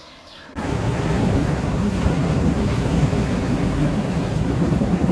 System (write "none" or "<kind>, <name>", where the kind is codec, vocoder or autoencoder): codec, SNAC